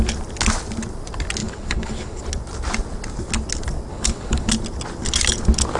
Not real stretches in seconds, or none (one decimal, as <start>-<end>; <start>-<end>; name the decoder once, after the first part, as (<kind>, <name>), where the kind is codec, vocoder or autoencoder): 1.4-2.2 (codec, HILCodec); 3.9-4.5